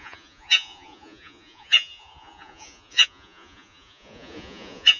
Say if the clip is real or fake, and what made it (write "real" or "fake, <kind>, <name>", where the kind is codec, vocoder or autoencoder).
fake, vocoder, Vocos